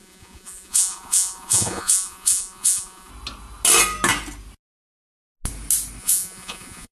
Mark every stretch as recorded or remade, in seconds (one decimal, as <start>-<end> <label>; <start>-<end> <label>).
0.0-3.1 remade; 3.1-6.0 recorded; 6.0-6.9 remade